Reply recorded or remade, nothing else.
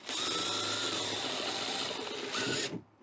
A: recorded